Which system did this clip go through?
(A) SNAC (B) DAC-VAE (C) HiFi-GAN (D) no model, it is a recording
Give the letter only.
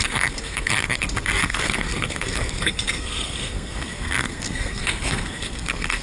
A